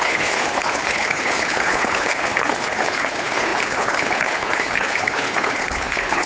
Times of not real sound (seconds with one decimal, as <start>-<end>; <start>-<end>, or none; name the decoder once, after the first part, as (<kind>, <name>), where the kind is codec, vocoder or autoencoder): 0.0-6.3 (codec, HILCodec)